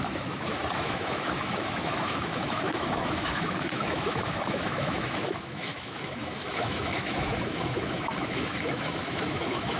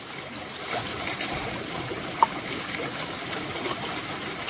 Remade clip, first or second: first